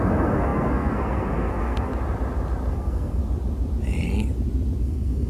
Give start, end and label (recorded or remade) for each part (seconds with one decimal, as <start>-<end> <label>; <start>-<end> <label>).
0.0-1.9 remade; 1.9-2.7 recorded; 2.7-3.2 remade; 3.2-4.8 recorded; 4.8-5.3 remade